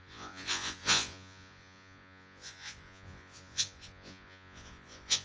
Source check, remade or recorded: remade